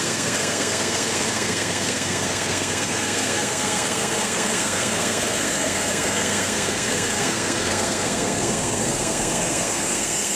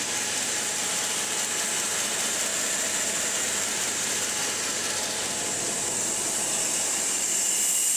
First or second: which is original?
second